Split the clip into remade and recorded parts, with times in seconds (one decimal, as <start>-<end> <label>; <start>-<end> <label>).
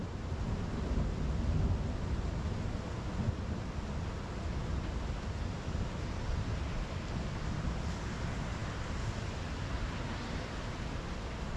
0.0-11.6 recorded